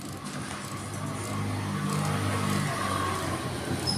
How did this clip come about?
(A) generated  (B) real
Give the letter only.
B